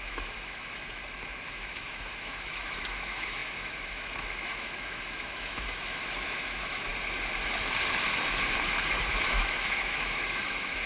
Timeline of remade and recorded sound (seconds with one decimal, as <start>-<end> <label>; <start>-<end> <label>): 0.0-1.0 remade; 1.0-1.5 recorded; 1.5-6.9 remade; 6.9-9.1 recorded; 9.1-10.9 remade